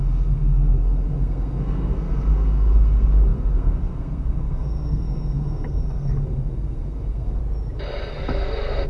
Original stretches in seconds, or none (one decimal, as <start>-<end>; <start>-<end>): 7.4-8.1